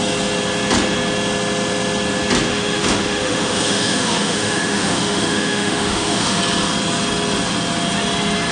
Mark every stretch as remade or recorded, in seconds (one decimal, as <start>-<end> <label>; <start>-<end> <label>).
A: 0.0-2.5 recorded; 2.5-6.4 remade; 6.4-8.5 recorded